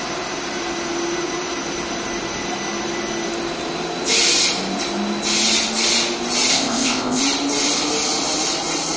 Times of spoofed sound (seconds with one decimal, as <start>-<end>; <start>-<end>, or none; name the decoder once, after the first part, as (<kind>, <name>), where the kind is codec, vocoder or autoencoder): 6.5-7.2 (codec, ZipCodec)